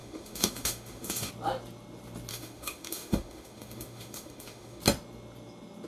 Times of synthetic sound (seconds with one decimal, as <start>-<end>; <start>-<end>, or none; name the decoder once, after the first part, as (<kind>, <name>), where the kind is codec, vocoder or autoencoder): 0.0-1.3 (autoencoder, DAC-VAE); 2.3-4.8